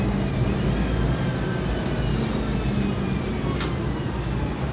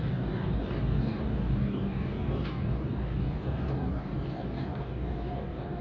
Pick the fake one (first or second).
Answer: second